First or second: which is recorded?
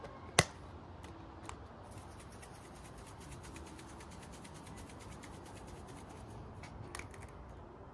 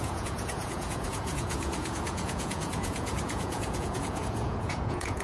first